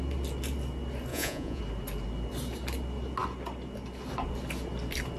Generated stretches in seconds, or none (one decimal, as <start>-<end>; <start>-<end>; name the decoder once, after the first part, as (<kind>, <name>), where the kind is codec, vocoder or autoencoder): 1.1-1.6 (vocoder, Vocos)